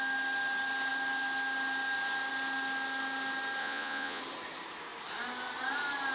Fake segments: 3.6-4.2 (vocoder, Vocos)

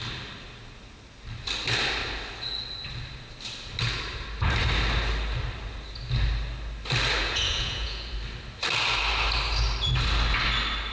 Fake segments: 7.2-8.1 (vocoder, Vocos)

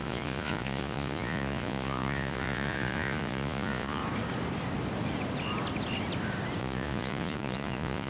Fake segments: 0.0-4.0 (vocoder, Vocos); 6.6-8.1

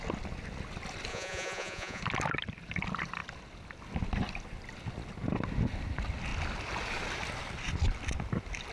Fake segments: 1.1-2.0 (vocoder, Vocos)

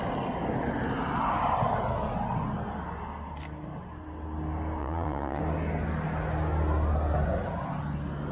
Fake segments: 4.8-5.4 (vocoder, Vocos)

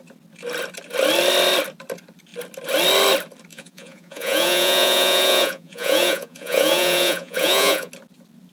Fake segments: 3.5-7.9 (vocoder, Vocos)

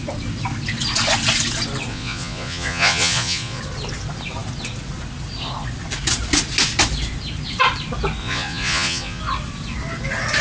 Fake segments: 1.9-3.6 (vocoder, Vocos); 8.2-9.2

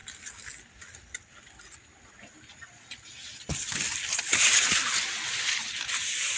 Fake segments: none